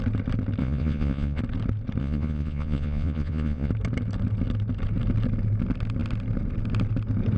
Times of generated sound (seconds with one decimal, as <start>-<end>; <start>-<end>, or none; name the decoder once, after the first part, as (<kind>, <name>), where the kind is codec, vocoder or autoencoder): 0.6-1.4 (vocoder, Vocos); 2.0-3.7